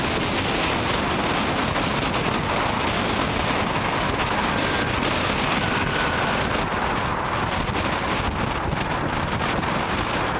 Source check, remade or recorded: recorded